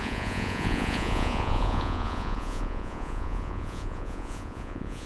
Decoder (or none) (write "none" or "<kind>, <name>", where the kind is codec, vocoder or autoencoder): vocoder, Vocos